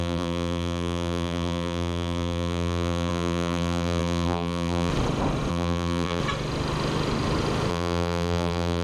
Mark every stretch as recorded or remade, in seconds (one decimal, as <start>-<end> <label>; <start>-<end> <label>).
0.0-4.9 remade; 4.9-5.5 recorded; 5.5-6.2 remade; 6.2-7.7 recorded; 7.7-8.8 remade